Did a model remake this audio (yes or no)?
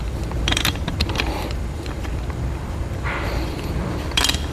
yes